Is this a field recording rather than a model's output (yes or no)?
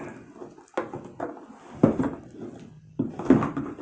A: yes